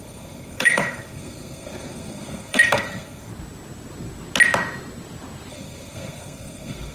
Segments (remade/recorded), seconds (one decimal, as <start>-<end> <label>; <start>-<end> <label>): 0.0-3.3 remade; 3.3-5.5 recorded; 5.5-6.9 remade